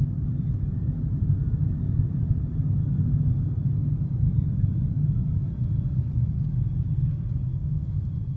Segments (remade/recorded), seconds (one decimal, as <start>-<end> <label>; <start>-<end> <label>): 0.0-7.5 recorded; 7.5-8.0 remade; 8.0-8.4 recorded